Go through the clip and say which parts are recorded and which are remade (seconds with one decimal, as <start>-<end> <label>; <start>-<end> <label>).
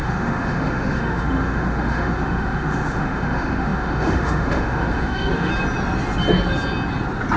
0.0-5.5 remade; 5.5-7.4 recorded